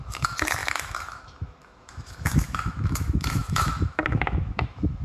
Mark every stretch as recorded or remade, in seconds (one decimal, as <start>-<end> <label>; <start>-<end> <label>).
0.0-5.0 remade